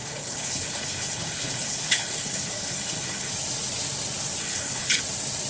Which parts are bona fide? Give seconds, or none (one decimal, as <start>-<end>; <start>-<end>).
3.3-4.4; 5.0-5.5